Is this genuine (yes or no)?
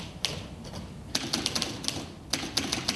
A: yes